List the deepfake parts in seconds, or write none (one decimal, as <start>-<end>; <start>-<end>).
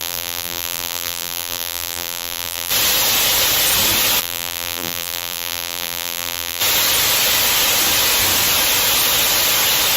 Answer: 0.0-2.7; 4.2-6.6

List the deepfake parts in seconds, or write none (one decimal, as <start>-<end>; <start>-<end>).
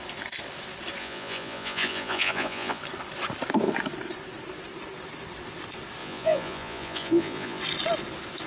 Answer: 1.0-2.8; 6.0-7.6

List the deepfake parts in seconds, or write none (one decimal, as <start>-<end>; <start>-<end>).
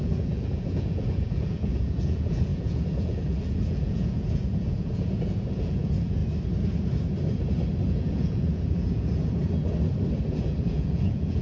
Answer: 0.0-6.2; 7.9-9.4; 10.3-11.4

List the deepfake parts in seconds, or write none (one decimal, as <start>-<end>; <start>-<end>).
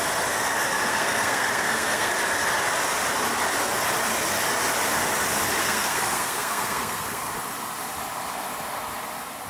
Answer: 0.9-2.1; 5.6-7.3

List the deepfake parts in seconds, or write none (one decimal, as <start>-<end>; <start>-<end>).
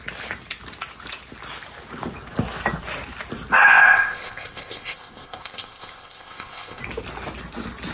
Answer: 3.7-6.8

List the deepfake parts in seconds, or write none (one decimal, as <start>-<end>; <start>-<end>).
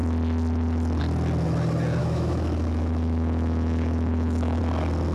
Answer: 2.0-4.6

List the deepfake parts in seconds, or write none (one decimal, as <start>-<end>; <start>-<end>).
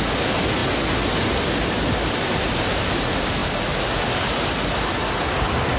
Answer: none